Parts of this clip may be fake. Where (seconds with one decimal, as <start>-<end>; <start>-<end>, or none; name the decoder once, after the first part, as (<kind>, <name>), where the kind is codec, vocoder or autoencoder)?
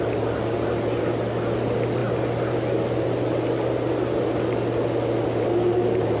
none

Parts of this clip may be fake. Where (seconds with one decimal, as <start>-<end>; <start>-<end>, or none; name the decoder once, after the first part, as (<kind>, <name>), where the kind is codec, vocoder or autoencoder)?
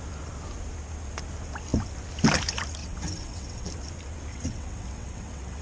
2.8-3.7 (vocoder, WaveNeXt); 4.3-5.6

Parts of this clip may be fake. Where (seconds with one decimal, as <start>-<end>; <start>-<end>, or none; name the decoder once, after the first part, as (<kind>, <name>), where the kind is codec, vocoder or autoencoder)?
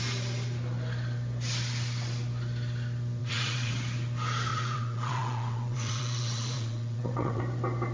3.2-3.7 (vocoder, WaveNeXt); 4.5-7.4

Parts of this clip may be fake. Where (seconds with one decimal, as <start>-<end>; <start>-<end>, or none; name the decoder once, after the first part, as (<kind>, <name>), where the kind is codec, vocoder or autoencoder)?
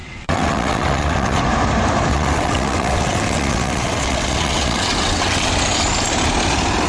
0.0-1.4 (vocoder, WaveNeXt); 2.1-5.5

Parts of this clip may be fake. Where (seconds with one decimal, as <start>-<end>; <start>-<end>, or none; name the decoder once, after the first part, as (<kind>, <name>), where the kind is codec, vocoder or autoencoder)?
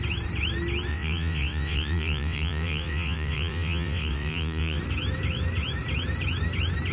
0.9-4.8 (vocoder, WaveNeXt)